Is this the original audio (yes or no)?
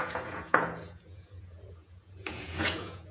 no